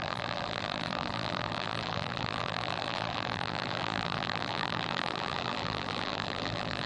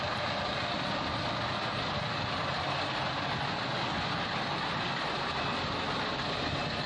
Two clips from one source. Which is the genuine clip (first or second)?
second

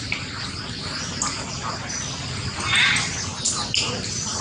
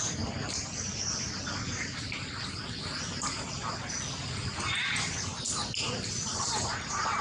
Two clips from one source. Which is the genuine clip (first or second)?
first